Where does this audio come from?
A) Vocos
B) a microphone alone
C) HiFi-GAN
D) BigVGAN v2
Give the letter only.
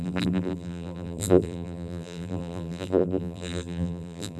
D